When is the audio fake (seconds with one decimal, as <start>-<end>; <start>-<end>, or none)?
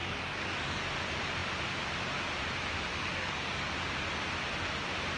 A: 0.0-0.8; 2.9-3.7